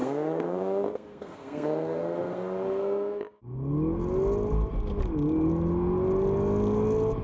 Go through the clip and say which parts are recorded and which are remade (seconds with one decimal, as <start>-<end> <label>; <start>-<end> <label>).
0.0-3.4 remade; 3.4-7.2 recorded